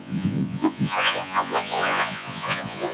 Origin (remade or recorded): remade